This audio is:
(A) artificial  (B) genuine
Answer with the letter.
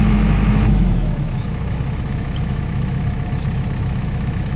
A